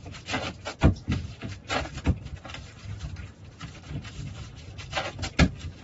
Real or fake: real